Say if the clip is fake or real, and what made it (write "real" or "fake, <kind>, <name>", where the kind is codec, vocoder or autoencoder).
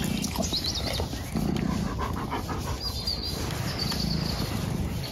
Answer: real